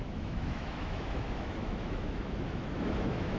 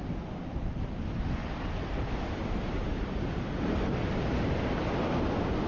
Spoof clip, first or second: first